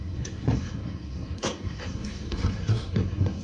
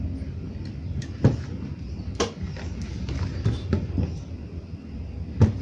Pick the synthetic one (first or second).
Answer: first